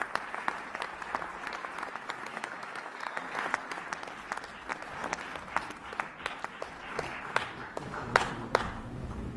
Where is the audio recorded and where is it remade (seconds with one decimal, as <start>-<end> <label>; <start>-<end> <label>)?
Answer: 0.0-2.3 recorded; 2.3-3.2 remade; 3.2-7.6 recorded; 7.6-8.3 remade; 8.3-9.4 recorded